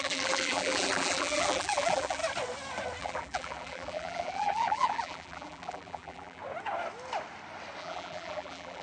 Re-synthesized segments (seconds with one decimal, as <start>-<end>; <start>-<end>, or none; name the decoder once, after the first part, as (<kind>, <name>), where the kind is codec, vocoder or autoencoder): 0.0-2.2 (vocoder, BigVGAN v2); 3.0-6.4; 7.8-8.8